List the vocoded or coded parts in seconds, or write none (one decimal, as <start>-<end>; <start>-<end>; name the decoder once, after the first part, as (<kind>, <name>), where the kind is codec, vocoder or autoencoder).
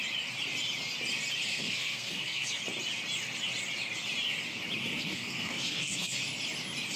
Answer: 1.5-2.6 (codec, SNAC); 4.8-6.2